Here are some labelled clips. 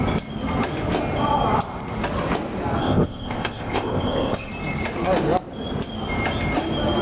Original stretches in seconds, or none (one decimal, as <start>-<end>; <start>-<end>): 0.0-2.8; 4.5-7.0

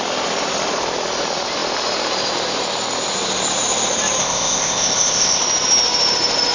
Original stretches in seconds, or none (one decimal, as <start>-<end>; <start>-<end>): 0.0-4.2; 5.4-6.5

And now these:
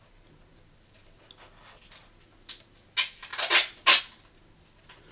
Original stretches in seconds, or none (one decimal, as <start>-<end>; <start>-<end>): 0.0-5.1

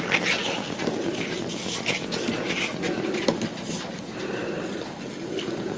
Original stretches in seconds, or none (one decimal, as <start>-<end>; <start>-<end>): 0.0-5.8